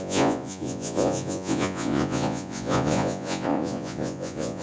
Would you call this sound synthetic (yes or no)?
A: yes